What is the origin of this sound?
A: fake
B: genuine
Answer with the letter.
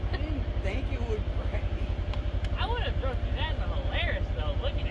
B